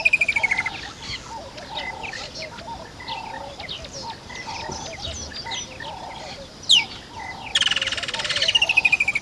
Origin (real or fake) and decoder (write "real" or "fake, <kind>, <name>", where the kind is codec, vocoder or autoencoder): real